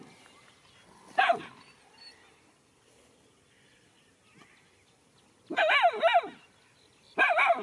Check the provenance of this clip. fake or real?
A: real